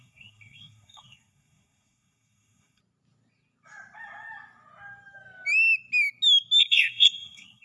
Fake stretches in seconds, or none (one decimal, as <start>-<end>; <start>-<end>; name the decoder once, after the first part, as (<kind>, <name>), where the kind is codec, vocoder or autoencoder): 0.0-2.8 (codec, SNAC); 6.6-7.6